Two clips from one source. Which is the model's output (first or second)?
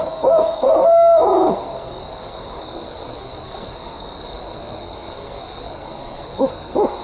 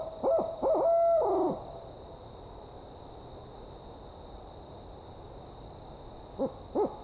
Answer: first